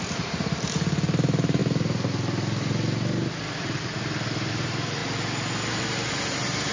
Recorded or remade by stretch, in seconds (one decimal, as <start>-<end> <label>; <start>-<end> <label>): 0.0-1.6 remade; 1.6-4.5 recorded; 4.5-5.0 remade; 5.0-6.1 recorded; 6.1-6.7 remade